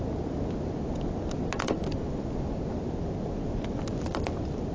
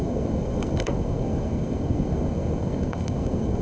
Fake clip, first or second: second